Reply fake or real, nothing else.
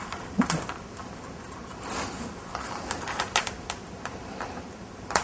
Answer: real